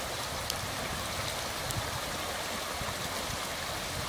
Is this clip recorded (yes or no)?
yes